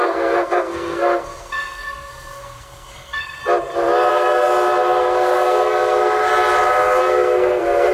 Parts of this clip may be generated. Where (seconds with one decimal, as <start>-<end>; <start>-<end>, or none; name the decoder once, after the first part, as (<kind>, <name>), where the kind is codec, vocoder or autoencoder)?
0.0-3.4 (codec, SNAC); 4.1-4.5; 5.0-6.3; 7.0-7.9